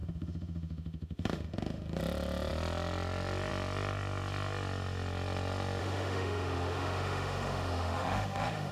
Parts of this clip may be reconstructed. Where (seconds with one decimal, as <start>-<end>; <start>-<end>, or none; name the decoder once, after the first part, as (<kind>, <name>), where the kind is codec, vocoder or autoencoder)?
0.0-2.0 (autoencoder, DAC-VAE); 5.8-8.7